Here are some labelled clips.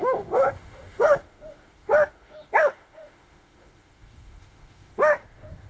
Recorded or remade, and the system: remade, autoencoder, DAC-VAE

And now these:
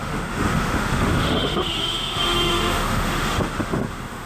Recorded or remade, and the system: remade, autoencoder, DAC-VAE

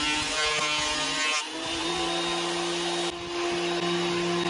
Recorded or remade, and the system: recorded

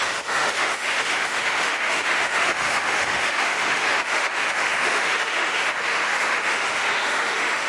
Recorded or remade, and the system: remade, autoencoder, DAC-VAE